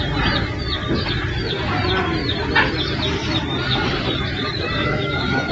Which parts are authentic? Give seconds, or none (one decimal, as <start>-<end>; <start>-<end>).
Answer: 0.0-4.8